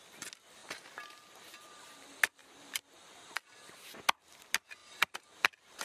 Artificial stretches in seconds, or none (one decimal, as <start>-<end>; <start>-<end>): 0.6-1.7; 2.4-3.4; 4.8-5.8